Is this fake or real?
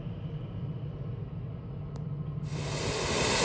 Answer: real